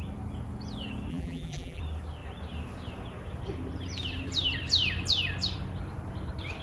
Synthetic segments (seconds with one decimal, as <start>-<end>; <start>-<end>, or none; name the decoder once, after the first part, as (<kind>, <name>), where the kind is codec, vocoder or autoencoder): 1.1-1.8 (vocoder, BigVGAN v2)